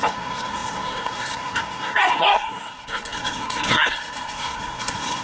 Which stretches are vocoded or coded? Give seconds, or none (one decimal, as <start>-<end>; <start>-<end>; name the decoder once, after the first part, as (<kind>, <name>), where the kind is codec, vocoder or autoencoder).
0.0-5.2 (codec, SNAC)